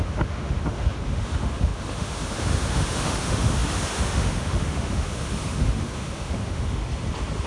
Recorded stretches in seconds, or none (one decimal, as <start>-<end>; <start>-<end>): 6.8-7.5